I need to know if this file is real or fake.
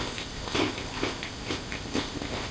fake